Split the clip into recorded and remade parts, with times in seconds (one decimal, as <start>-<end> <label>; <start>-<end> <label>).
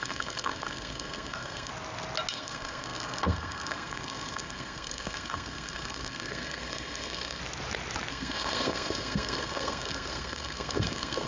0.0-1.7 remade; 1.7-2.3 recorded; 2.3-7.4 remade; 7.4-8.1 recorded; 8.1-11.3 remade